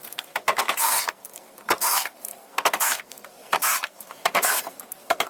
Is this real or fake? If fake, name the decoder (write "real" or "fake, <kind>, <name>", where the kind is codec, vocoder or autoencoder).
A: fake, codec, SNAC